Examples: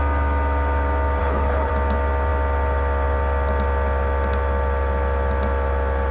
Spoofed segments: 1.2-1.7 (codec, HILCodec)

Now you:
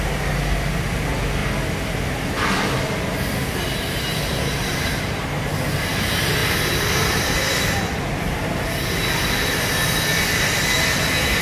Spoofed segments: 4.7-5.6 (vocoder, BigVGAN v2)

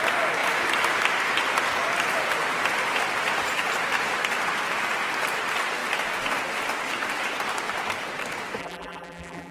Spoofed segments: 8.6-9.5 (vocoder, BigVGAN v2)

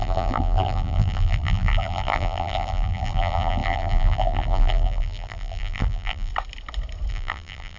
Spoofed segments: 0.0-6.3 (vocoder, BigVGAN v2); 7.1-7.8

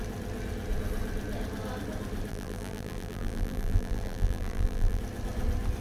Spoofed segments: 2.3-5.0 (vocoder, BigVGAN v2)